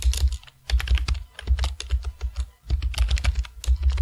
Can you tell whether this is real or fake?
real